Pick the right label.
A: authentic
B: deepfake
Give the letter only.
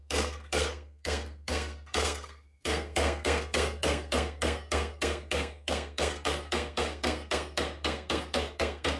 B